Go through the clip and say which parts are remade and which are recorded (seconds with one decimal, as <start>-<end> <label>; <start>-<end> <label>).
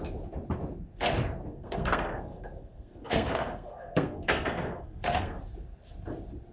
0.0-1.5 recorded; 1.5-5.4 remade; 5.4-6.5 recorded